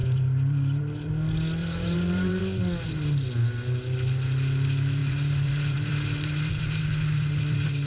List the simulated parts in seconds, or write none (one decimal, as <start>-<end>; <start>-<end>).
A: 0.0-1.1; 1.6-2.4; 5.0-7.9